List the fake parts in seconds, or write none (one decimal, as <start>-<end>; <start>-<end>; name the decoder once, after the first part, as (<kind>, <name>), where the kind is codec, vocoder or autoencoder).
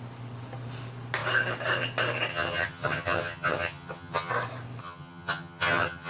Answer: 2.3-4.3 (vocoder, HiFi-GAN); 4.8-6.1